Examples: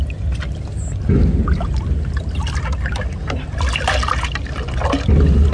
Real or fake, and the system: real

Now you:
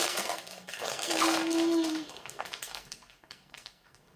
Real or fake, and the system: fake, codec, SNAC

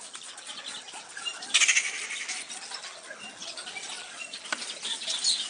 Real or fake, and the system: real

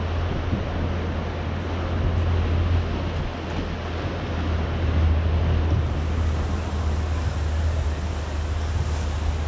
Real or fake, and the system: real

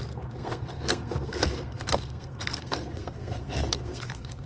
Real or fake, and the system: fake, codec, SNAC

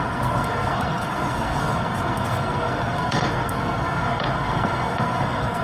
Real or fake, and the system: fake, codec, SNAC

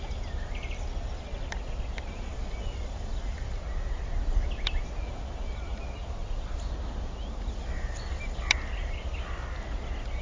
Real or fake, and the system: real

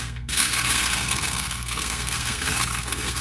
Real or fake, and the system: fake, codec, SNAC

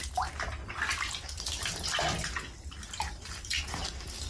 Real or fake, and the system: real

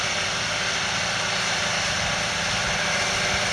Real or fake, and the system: real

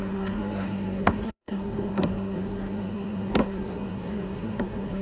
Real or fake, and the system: fake, codec, SNAC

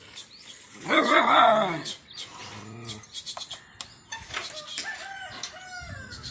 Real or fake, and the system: real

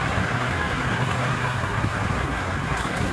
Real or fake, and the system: fake, codec, SNAC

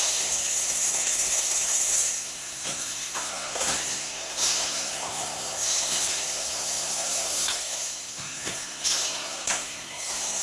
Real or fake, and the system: fake, codec, SNAC